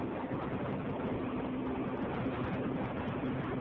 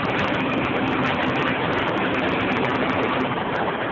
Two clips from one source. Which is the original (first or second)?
first